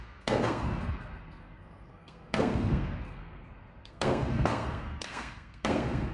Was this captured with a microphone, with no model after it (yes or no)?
no